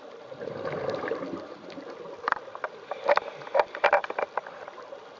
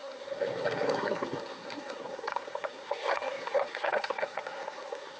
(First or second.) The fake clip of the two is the second